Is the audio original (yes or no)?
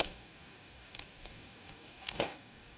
no